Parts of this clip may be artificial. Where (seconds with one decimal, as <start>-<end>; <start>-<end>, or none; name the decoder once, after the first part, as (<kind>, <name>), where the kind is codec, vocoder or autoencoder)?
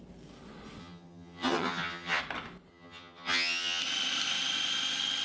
0.8-2.2 (vocoder, HiFi-GAN); 2.7-3.8